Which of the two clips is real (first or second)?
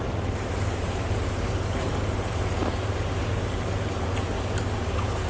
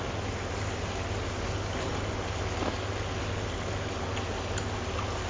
second